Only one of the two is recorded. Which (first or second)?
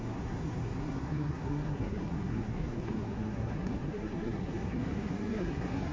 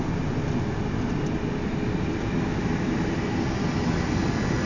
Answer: second